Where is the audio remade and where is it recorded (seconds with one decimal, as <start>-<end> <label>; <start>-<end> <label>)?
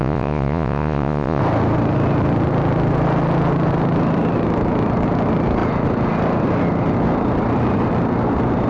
0.0-1.4 remade; 1.4-8.7 recorded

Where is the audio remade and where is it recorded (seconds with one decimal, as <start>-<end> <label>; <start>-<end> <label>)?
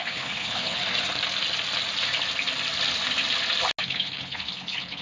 0.0-0.8 remade; 0.8-3.8 recorded; 3.8-5.0 remade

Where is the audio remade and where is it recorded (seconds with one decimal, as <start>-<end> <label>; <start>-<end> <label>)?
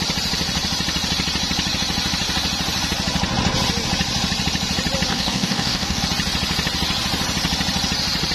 0.0-5.1 recorded; 5.1-6.0 remade; 6.0-8.3 recorded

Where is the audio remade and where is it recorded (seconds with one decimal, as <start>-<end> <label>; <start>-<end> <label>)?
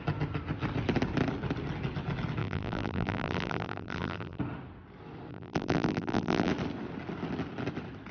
0.0-2.4 recorded; 2.4-4.4 remade; 4.4-5.3 recorded; 5.3-6.5 remade; 6.5-8.1 recorded